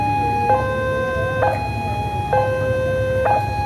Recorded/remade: recorded